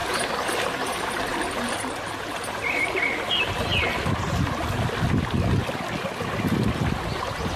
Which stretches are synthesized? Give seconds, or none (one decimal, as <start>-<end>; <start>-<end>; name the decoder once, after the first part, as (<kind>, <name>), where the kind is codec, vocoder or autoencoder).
0.6-3.7 (vocoder, BigVGAN v2); 7.0-7.6